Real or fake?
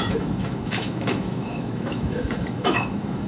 fake